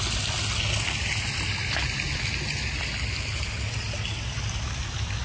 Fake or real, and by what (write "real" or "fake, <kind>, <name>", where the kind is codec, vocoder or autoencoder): real